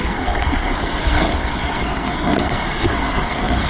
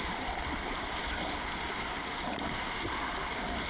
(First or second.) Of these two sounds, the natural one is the second